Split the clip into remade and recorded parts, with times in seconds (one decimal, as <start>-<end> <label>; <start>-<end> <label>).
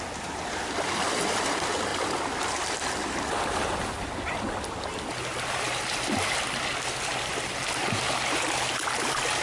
0.0-9.4 recorded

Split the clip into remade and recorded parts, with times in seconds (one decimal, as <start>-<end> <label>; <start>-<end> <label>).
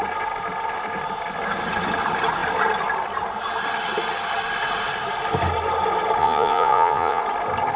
0.0-6.2 recorded; 6.2-7.2 remade; 7.2-7.8 recorded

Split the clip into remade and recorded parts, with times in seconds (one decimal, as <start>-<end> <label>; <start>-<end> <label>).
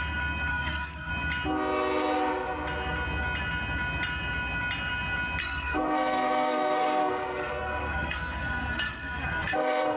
0.0-0.5 recorded; 0.5-1.1 remade; 1.1-5.4 recorded; 5.4-10.0 remade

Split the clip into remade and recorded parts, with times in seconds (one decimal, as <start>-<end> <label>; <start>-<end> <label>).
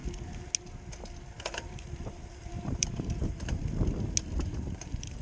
0.0-1.5 recorded; 1.5-3.6 remade; 3.6-4.4 recorded; 4.4-5.2 remade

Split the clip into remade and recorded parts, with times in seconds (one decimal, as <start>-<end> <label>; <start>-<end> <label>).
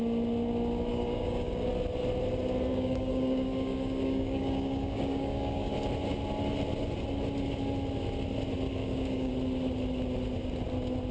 0.0-0.9 recorded; 0.9-1.7 remade; 1.7-2.7 recorded; 2.7-5.7 remade; 5.7-8.7 recorded; 8.7-9.3 remade; 9.3-11.1 recorded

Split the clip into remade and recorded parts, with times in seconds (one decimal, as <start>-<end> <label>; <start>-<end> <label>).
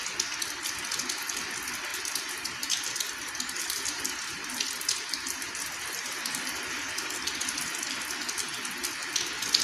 0.0-1.9 recorded; 1.9-6.9 remade; 6.9-9.6 recorded